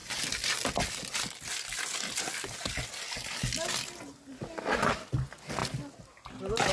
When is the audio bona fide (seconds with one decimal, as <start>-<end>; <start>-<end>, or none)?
0.0-6.7